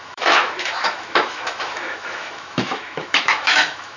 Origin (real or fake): fake